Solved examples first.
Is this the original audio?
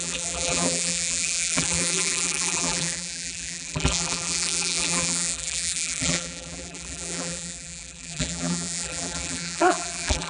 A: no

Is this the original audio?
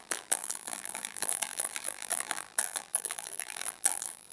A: no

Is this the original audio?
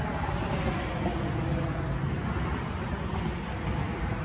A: yes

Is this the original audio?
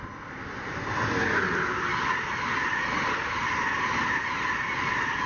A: yes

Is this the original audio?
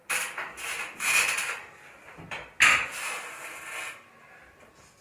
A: yes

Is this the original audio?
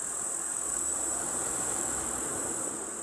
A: no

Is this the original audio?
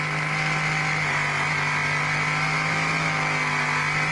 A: yes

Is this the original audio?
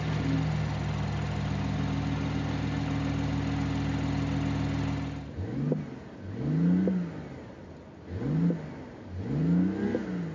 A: yes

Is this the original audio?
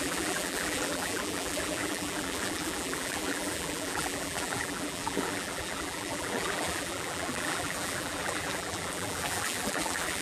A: no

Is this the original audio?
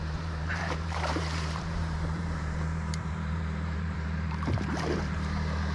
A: no